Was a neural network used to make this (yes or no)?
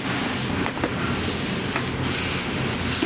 no